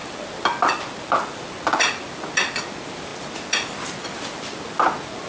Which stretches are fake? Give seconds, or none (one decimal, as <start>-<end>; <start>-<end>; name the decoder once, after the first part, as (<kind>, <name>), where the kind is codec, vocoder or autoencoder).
none

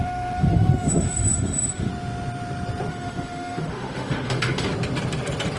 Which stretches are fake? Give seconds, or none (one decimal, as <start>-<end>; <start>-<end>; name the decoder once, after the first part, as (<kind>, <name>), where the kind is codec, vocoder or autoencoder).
0.0-1.9 (autoencoder, DAC-VAE); 2.9-4.7

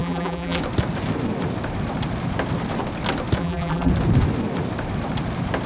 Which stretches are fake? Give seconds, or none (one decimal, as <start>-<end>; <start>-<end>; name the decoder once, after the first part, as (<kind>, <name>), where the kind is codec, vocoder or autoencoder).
0.0-0.6 (vocoder, BigVGAN v2); 3.4-3.9

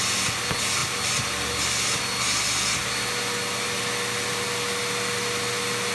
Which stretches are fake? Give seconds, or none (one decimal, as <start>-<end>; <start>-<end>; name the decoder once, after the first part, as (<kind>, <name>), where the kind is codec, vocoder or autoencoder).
none

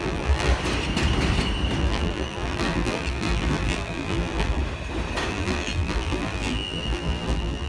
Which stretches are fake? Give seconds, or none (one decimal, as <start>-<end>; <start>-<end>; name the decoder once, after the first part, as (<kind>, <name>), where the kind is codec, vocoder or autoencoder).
0.0-0.5 (vocoder, BigVGAN v2); 1.8-4.6; 5.3-7.7

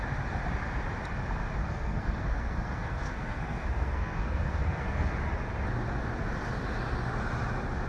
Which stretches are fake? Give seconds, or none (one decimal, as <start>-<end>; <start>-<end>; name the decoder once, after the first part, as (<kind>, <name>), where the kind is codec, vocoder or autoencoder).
1.6-5.2 (codec, SNAC)

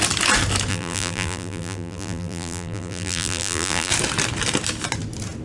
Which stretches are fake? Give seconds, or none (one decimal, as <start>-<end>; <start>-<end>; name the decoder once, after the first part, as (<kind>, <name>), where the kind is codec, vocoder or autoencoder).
0.7-3.9 (vocoder, BigVGAN v2)

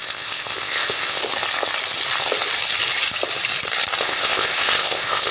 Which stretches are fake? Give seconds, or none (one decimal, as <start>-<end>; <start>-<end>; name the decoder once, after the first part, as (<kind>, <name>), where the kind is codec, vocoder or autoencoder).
0.0-1.2 (codec, ZipCodec); 4.0-5.3